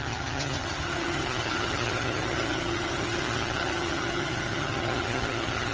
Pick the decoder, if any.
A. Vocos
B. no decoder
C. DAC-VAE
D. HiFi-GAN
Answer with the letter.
D